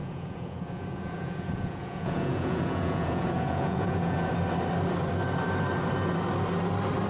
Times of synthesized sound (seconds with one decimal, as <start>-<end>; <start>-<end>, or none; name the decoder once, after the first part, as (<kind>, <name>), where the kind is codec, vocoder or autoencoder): 0.0-4.3 (vocoder, Vocos)